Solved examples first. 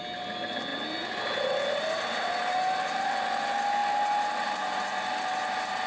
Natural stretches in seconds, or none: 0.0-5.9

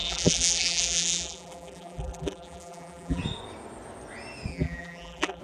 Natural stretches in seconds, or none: 3.2-4.5

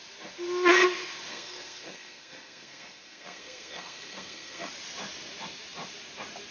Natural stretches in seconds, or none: 0.0-1.3; 4.7-6.5